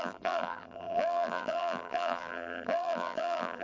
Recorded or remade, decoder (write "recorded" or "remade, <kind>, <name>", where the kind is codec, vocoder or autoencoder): remade, vocoder, BigVGAN v2